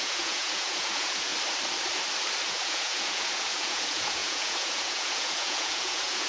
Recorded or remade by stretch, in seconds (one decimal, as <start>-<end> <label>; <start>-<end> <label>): 0.0-1.3 remade; 1.3-2.5 recorded; 2.5-6.3 remade